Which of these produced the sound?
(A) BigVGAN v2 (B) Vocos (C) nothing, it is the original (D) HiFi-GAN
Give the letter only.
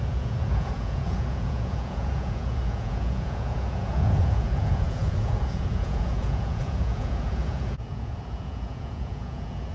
B